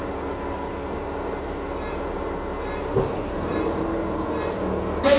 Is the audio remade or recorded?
recorded